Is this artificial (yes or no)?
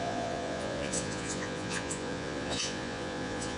yes